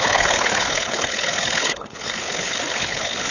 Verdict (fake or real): fake